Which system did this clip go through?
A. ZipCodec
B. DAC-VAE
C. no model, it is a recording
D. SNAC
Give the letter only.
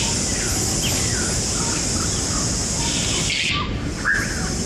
C